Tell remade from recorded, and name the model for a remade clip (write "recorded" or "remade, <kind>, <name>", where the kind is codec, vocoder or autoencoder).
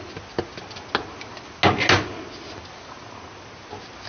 recorded